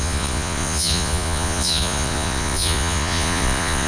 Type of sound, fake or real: fake